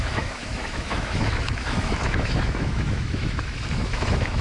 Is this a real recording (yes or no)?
no